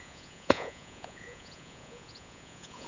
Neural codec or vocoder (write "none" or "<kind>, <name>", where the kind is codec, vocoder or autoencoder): vocoder, Vocos